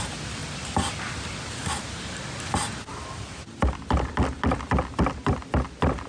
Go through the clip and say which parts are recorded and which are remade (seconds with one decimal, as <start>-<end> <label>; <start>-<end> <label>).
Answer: 0.0-6.1 recorded